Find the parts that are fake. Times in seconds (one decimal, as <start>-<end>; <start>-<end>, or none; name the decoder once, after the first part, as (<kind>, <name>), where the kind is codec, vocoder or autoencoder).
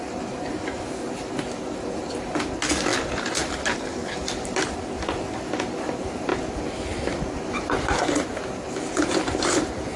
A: 2.9-5.6 (vocoder, BigVGAN v2)